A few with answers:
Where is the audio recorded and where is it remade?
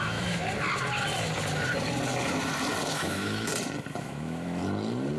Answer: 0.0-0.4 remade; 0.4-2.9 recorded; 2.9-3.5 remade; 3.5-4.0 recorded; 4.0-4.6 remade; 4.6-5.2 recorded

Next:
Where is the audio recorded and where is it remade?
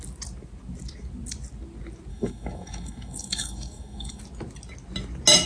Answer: 0.0-2.1 recorded; 2.1-4.2 remade; 4.2-5.5 recorded